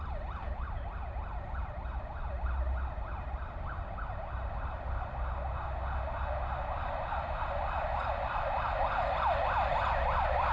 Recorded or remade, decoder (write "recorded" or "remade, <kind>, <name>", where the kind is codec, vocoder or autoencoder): recorded